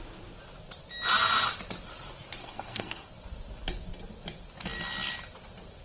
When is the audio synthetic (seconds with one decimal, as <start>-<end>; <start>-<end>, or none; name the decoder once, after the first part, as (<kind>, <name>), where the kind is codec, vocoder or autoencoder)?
2.4-3.1 (codec, SNAC)